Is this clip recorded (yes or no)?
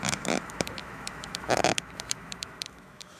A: no